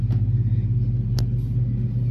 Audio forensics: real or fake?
real